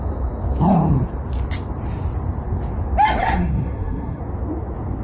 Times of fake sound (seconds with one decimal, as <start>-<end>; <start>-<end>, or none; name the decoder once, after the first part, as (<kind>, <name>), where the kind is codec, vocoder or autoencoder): 3.2-4.2 (codec, SNAC)